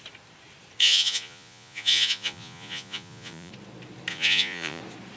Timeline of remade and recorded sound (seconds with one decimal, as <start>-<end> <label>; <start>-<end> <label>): 0.0-0.8 recorded; 0.8-3.5 remade; 3.5-4.1 recorded; 4.1-4.8 remade; 4.8-5.2 recorded